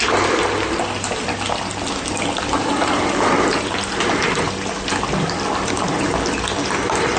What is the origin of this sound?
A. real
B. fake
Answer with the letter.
A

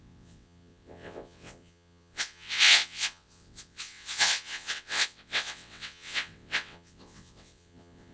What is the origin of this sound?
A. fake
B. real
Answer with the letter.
A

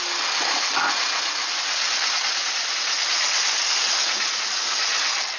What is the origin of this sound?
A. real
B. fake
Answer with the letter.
A